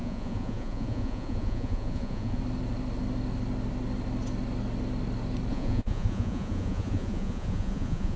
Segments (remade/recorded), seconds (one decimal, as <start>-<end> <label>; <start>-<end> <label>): 0.0-2.4 remade; 2.4-5.5 recorded; 5.5-8.2 remade